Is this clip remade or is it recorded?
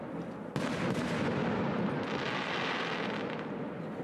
recorded